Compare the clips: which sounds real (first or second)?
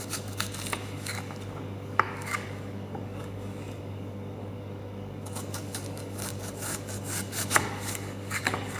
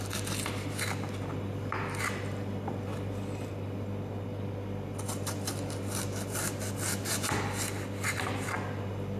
second